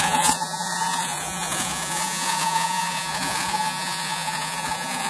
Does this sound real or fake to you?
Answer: fake